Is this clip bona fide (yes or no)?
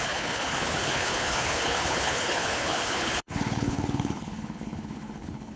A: no